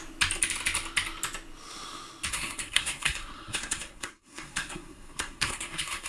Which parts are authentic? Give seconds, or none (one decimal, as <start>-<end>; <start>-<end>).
0.0-2.3